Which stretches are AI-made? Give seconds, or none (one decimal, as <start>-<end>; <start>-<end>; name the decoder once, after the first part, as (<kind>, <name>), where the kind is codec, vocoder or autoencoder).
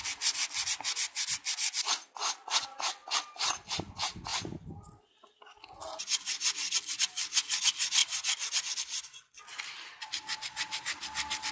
none